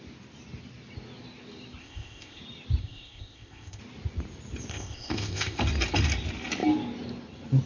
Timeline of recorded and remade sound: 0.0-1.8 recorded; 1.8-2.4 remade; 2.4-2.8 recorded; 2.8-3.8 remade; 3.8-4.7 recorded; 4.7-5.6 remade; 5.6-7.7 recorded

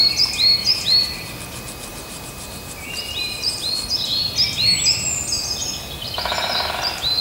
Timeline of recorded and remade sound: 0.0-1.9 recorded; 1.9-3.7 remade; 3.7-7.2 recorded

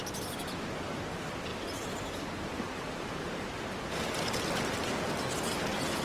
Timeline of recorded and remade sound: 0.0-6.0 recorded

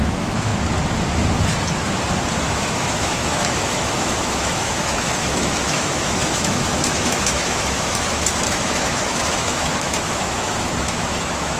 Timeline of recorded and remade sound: 0.0-0.5 remade; 0.5-2.4 recorded; 2.4-11.6 remade

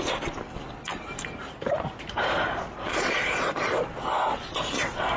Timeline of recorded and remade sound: 0.0-0.9 recorded; 0.9-4.0 remade; 4.0-5.2 recorded

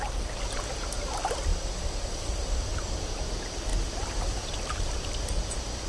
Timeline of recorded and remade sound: 0.0-3.7 recorded; 3.7-4.7 remade; 4.7-5.9 recorded

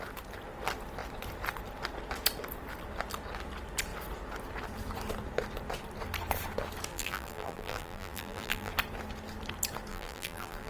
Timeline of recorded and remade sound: 0.0-6.9 recorded; 6.9-8.7 remade; 8.7-9.9 recorded; 9.9-10.7 remade